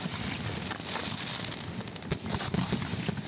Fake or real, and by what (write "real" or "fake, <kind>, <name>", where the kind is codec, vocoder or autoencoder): fake, vocoder, BigVGAN v2